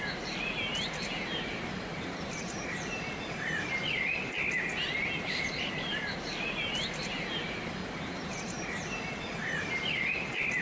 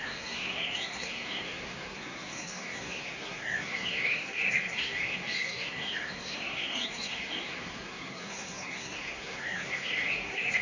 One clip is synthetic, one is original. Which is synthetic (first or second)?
second